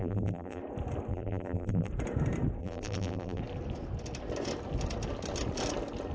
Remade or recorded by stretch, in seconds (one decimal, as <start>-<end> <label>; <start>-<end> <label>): 0.0-0.6 remade; 0.6-1.1 recorded; 1.1-1.9 remade; 1.9-2.6 recorded; 2.6-3.4 remade; 3.4-6.1 recorded